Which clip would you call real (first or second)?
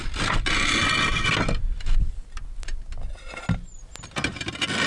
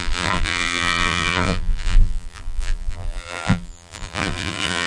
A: first